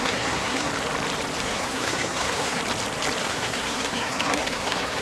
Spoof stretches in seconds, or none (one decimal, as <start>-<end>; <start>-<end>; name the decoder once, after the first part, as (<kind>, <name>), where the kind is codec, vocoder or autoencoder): 0.0-0.7 (codec, SNAC); 1.4-2.6; 3.2-5.0